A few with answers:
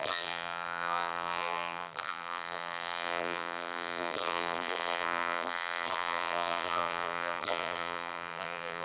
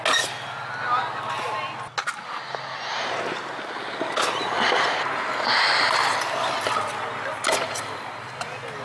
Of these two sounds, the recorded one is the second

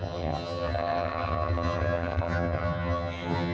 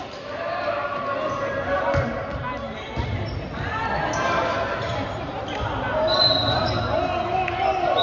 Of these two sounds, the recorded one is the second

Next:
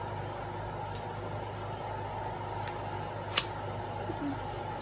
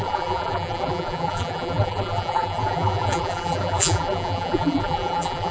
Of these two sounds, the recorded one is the first